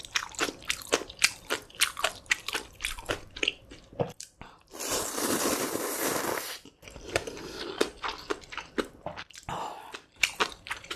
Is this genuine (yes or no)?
no